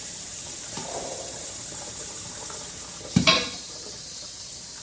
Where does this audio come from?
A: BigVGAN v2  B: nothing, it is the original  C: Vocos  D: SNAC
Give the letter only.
A